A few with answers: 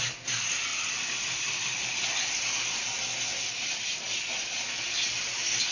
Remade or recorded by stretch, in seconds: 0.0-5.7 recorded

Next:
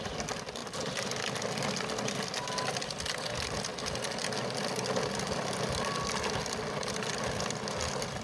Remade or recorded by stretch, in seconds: 0.0-8.2 recorded

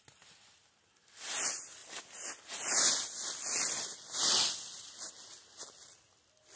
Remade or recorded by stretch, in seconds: 0.0-6.6 recorded

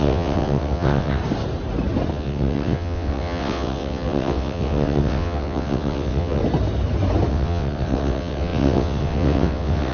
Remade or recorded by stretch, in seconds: 0.0-1.2 remade; 1.2-2.1 recorded; 2.1-6.4 remade; 6.4-7.3 recorded; 7.3-9.9 remade

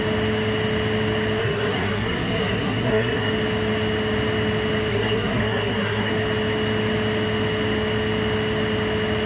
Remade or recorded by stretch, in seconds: 0.0-1.4 recorded; 1.4-3.3 remade; 3.3-4.9 recorded; 4.9-6.1 remade; 6.1-9.3 recorded

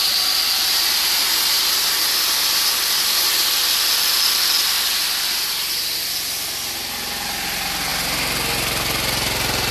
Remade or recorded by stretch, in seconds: 0.0-9.7 recorded